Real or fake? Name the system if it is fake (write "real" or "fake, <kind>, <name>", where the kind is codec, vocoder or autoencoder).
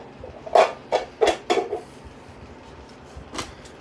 real